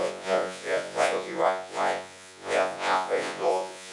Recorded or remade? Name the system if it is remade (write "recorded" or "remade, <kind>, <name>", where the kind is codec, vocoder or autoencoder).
remade, vocoder, Vocos